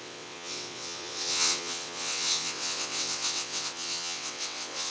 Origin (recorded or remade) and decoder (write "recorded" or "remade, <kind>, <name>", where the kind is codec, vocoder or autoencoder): remade, vocoder, WaveNeXt